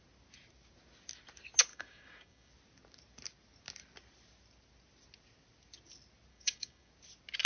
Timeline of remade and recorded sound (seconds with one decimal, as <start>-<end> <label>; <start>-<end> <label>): 0.0-1.7 recorded; 1.7-2.5 remade; 2.5-6.3 recorded; 6.3-6.9 remade; 6.9-7.5 recorded